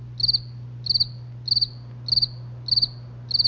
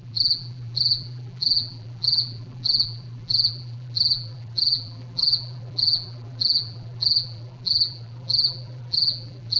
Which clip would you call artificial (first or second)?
second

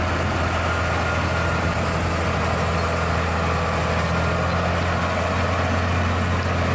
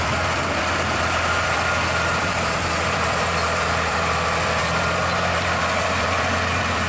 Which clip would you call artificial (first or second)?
second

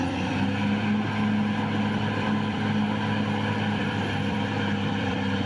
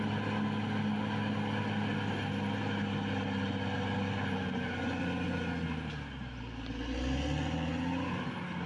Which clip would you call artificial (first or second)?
first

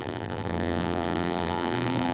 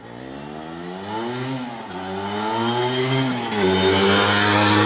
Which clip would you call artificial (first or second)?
first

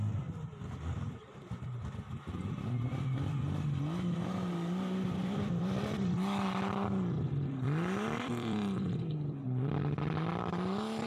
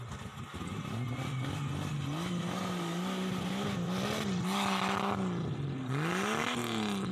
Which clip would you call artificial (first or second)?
first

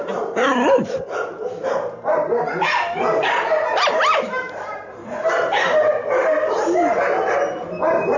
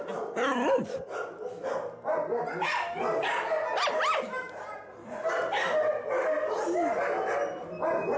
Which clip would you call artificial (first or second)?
first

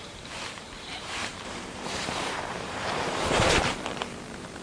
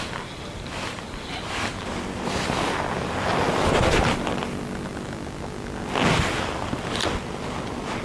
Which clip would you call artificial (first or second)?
first